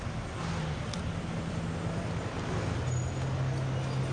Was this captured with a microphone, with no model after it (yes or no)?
yes